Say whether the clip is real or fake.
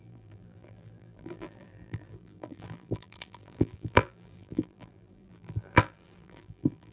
fake